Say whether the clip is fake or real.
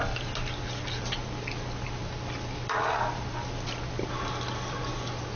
real